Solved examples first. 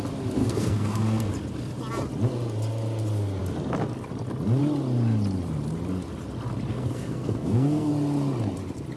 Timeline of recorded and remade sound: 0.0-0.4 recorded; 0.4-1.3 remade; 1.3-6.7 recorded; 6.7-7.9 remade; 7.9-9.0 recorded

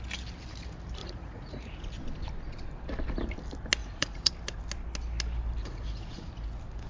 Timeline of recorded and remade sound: 0.0-1.0 recorded; 1.0-1.8 remade; 1.8-3.8 recorded; 3.8-4.3 remade; 4.3-5.6 recorded; 5.6-6.3 remade; 6.3-6.9 recorded

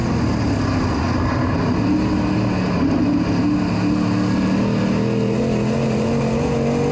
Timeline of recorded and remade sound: 0.0-6.9 recorded

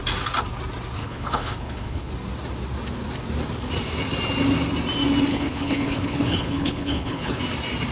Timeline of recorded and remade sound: 0.0-1.0 recorded; 1.0-2.1 remade; 2.1-5.3 recorded; 5.3-7.4 remade; 7.4-7.9 recorded

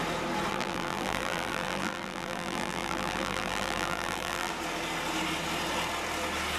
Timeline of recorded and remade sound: 0.0-0.5 recorded; 0.5-4.5 remade; 4.5-6.6 recorded

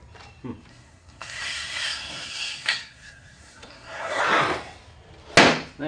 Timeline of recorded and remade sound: 0.0-0.7 recorded; 0.7-4.2 remade; 4.2-5.9 recorded

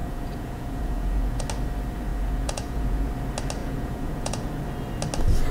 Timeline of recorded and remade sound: 0.0-1.4 remade; 1.4-2.1 recorded; 2.1-3.1 remade; 3.1-3.6 recorded; 3.6-4.5 remade; 4.5-5.5 recorded

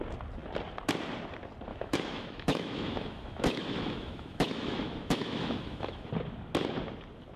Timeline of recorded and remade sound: 0.0-1.7 recorded; 1.7-6.1 remade; 6.1-7.4 recorded